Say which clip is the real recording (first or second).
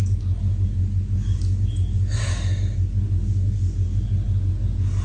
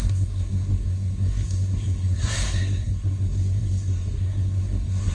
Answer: first